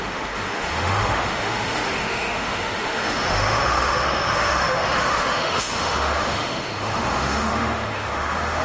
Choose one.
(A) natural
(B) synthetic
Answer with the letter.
B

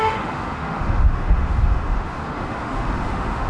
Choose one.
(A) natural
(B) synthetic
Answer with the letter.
B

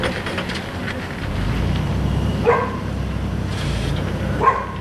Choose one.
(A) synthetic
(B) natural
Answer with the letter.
B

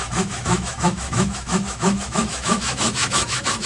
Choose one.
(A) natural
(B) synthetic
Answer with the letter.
B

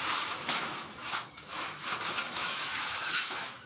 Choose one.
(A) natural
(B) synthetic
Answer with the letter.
B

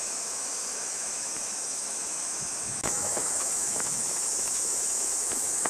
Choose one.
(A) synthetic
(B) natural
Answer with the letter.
A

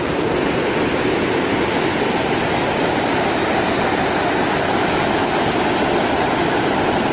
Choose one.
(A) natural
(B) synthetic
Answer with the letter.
A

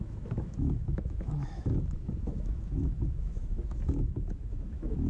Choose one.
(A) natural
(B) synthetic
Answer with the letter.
B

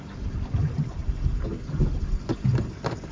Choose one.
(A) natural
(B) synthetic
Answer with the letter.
A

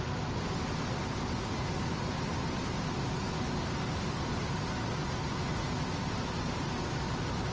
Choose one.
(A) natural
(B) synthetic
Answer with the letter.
A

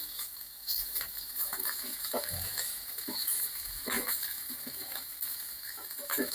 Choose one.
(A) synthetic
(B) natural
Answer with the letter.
A